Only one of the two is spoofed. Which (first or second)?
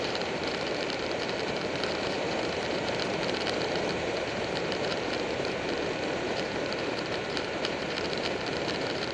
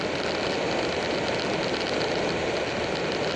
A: first